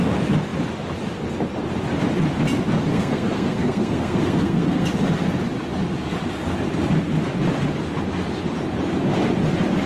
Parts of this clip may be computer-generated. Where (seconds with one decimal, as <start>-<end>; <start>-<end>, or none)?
2.9-4.9